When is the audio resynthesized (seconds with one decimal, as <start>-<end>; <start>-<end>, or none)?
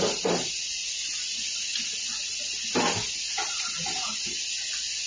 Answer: none